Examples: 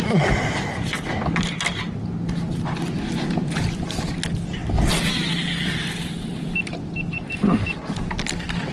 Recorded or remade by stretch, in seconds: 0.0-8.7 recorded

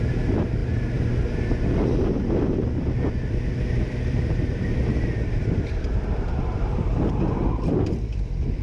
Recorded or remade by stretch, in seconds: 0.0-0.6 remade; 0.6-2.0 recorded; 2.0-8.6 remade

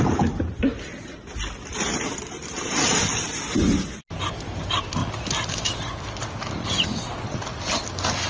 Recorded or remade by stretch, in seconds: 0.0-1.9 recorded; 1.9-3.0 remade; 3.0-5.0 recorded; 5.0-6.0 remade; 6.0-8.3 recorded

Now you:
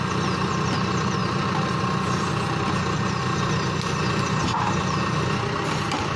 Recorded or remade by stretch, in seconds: 0.0-1.2 recorded; 1.2-1.7 remade; 1.7-4.4 recorded; 4.4-5.0 remade; 5.0-6.2 recorded

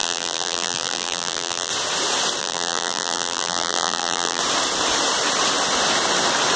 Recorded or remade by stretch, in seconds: 0.0-1.7 remade; 1.7-2.4 recorded; 2.4-4.4 remade; 4.4-6.6 recorded

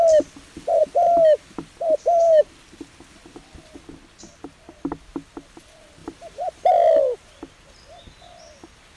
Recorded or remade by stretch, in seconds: 0.0-6.0 recorded; 6.0-8.4 remade; 8.4-9.0 recorded